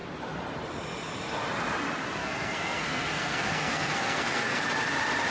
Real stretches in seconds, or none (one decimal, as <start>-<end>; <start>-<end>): 0.0-2.2; 4.6-5.3